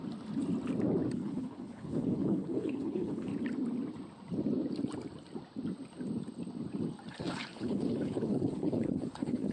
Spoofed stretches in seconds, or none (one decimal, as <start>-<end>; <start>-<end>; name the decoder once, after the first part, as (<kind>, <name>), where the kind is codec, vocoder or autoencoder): 1.1-3.3 (codec, HILCodec); 7.1-9.5